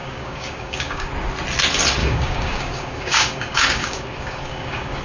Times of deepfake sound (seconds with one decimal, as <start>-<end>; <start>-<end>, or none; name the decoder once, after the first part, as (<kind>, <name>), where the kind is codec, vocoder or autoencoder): 0.0-1.1 (codec, DAC); 2.0-5.0